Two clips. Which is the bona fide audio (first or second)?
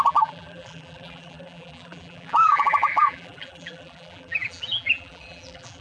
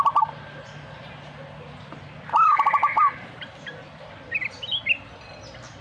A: second